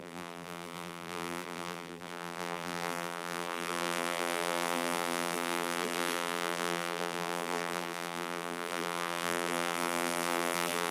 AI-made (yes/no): yes